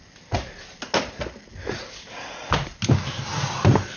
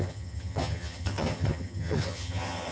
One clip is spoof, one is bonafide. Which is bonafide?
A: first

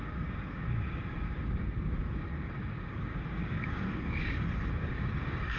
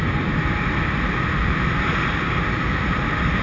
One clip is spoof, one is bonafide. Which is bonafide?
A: second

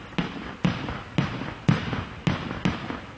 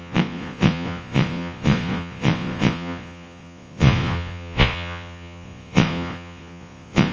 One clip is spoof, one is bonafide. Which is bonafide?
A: first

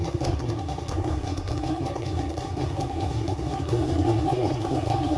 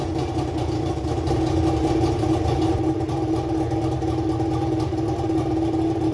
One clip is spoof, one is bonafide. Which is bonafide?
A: second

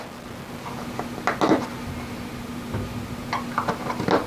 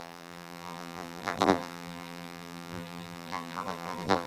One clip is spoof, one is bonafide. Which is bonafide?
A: first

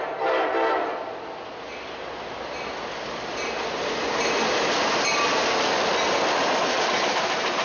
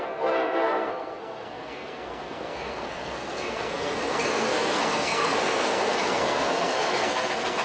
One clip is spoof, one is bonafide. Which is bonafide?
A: first